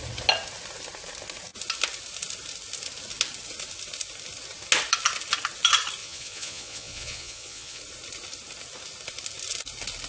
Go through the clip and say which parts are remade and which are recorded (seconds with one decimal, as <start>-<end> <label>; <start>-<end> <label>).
0.0-6.0 recorded; 6.0-7.8 remade; 7.8-10.1 recorded